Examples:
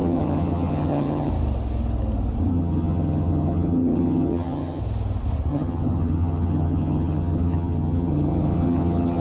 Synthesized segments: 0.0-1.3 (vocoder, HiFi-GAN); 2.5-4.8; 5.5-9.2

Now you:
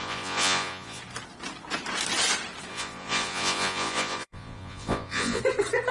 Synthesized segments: 0.0-1.0 (vocoder, Vocos); 2.7-5.4

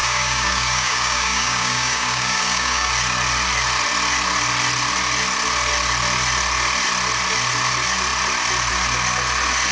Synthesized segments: 0.0-2.9 (codec, DAC)

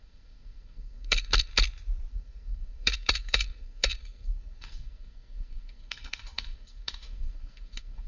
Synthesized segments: 0.0-1.5 (codec, SNAC); 2.1-8.1

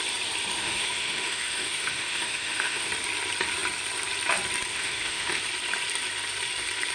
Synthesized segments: 0.5-2.9 (autoencoder, DAC-VAE); 4.7-5.4

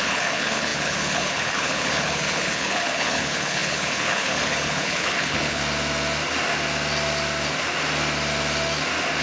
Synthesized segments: 0.0-5.6 (codec, HILCodec)

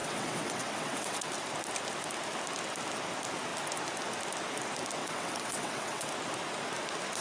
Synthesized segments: 0.0-1.3 (vocoder, WaveNeXt); 5.0-6.1